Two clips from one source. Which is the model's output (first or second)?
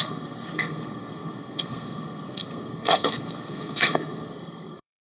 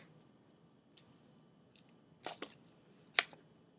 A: first